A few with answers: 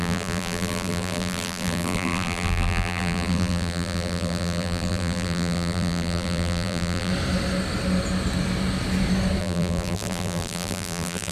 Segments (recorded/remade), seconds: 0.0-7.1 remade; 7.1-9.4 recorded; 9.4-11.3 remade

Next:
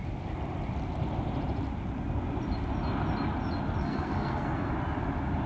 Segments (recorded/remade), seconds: 0.0-3.8 recorded; 3.8-4.7 remade; 4.7-5.5 recorded

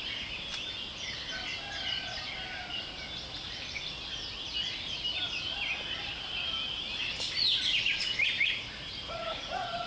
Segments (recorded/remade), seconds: 0.0-9.0 recorded; 9.0-9.9 remade

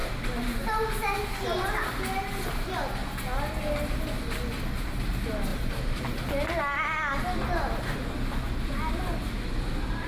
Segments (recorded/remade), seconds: 0.0-10.1 recorded

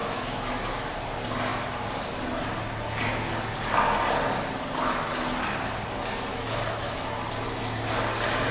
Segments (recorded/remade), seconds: 0.0-0.6 remade; 0.6-6.3 recorded; 6.3-7.2 remade; 7.2-8.5 recorded

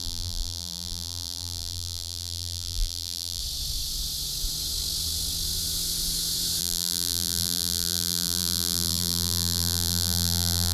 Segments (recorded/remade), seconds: 0.0-3.4 remade; 3.4-6.6 recorded; 6.6-10.7 remade

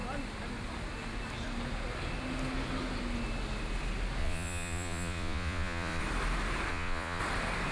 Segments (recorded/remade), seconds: 0.0-4.2 recorded; 4.2-6.0 remade; 6.0-6.7 recorded; 6.7-7.2 remade; 7.2-7.7 recorded